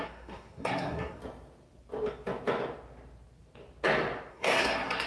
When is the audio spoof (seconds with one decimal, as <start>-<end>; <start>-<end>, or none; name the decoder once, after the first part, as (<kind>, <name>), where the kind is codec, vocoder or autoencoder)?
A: 0.0-1.2 (codec, SNAC); 4.3-5.1